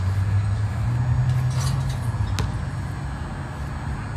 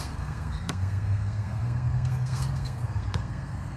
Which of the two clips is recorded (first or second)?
first